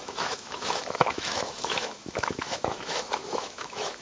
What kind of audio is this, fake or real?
fake